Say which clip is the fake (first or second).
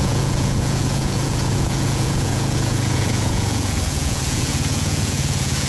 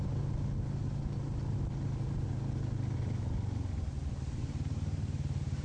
first